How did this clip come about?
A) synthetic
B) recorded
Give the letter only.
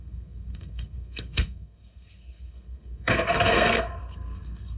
A